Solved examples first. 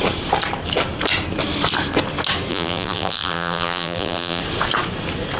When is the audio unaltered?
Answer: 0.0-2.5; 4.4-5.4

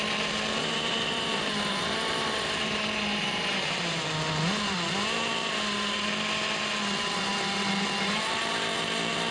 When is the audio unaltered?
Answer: 0.0-0.6; 4.1-9.3

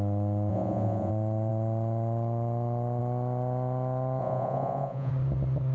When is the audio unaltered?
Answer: 0.0-0.5; 1.1-4.2; 5.1-5.7

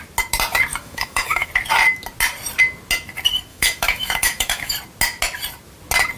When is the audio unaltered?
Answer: 0.0-0.7; 1.5-3.5; 4.7-6.2

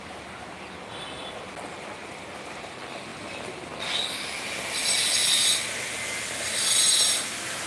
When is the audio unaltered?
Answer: 0.0-5.2; 5.8-7.7

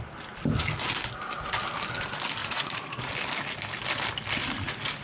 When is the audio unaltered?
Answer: 0.0-2.4; 3.1-5.0

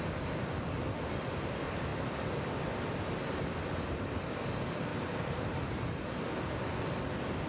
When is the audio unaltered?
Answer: 0.0-4.9; 5.5-7.5